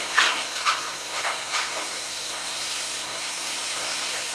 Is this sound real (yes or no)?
no